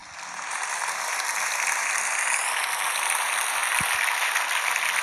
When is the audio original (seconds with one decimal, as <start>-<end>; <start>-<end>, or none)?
0.0-5.0